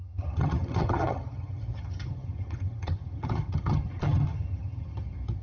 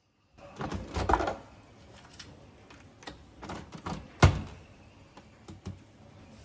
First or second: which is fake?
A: first